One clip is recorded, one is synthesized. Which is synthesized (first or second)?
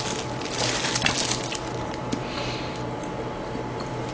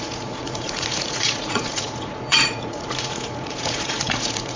second